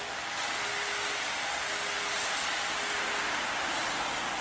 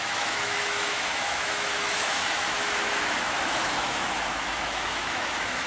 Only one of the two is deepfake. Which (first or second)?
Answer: second